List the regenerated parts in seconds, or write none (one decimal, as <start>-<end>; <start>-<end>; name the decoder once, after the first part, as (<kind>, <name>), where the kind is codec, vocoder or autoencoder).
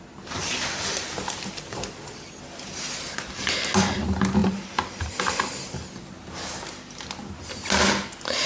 none